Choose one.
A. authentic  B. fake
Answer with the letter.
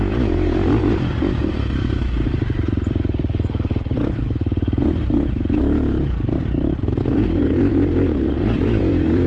B